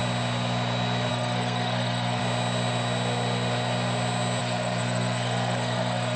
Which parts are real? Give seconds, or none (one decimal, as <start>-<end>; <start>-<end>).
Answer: 0.0-1.1; 2.2-4.4